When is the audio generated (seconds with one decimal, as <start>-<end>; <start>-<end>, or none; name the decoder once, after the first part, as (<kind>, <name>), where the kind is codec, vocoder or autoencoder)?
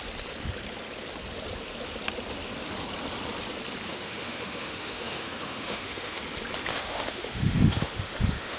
3.9-6.2 (autoencoder, DAC-VAE); 6.7-8.6